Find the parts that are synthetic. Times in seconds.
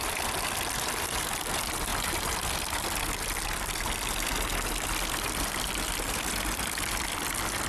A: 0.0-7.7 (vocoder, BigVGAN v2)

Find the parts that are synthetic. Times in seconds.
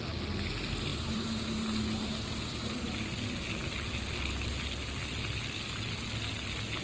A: 0.9-2.8 (vocoder, BigVGAN v2)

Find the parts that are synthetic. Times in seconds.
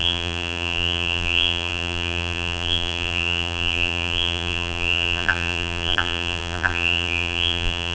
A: 0.0-7.9 (vocoder, BigVGAN v2)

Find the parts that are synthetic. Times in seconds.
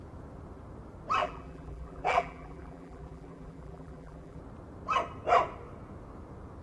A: 1.2-4.4 (vocoder, BigVGAN v2)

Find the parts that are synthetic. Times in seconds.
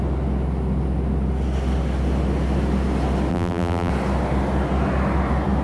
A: 3.3-3.9 (vocoder, BigVGAN v2)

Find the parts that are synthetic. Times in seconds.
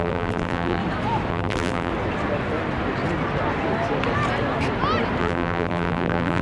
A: 0.0-0.8 (vocoder, BigVGAN v2); 1.3-1.9; 5.2-6.4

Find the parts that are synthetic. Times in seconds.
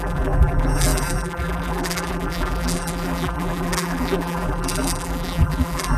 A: 0.0-6.0 (vocoder, BigVGAN v2)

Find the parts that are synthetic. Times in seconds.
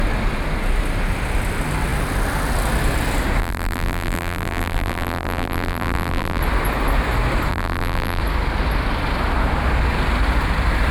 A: 3.4-6.4 (vocoder, BigVGAN v2); 7.5-8.2